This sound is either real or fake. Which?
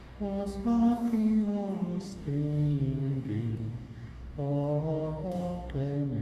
fake